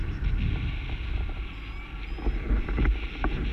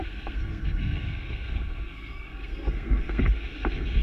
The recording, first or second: first